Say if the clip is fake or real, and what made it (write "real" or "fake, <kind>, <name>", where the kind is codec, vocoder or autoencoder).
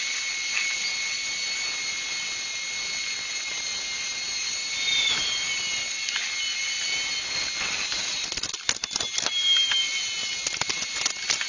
real